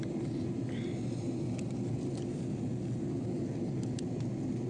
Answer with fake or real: real